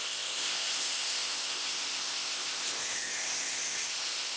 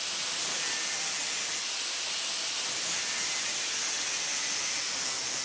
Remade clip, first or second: first